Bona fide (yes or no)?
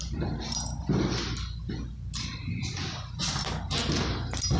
yes